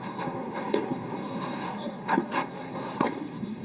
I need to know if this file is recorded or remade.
remade